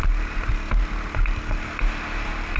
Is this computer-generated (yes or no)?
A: no